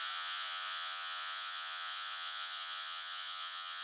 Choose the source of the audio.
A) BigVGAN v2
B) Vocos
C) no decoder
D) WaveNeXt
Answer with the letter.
B